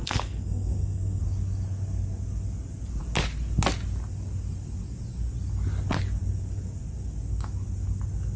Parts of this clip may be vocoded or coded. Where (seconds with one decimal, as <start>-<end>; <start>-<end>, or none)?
0.0-1.2